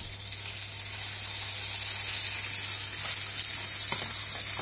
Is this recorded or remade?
recorded